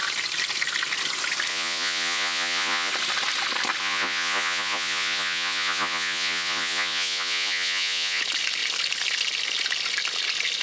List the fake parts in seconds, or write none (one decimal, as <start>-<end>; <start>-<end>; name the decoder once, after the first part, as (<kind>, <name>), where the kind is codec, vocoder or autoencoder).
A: 1.5-2.9 (vocoder, Vocos); 3.8-8.2